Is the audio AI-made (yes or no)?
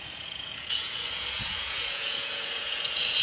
yes